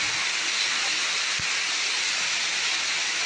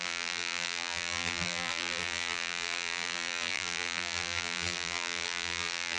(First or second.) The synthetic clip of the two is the second